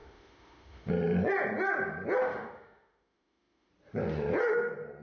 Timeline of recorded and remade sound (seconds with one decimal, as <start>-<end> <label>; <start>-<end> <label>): 0.0-0.9 remade; 0.9-2.2 recorded; 2.2-3.7 remade; 3.7-5.0 recorded